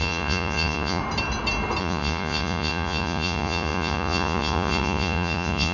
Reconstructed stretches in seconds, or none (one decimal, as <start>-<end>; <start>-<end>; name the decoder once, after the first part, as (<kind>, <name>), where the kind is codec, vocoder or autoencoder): 0.0-1.0 (vocoder, Vocos); 1.8-5.7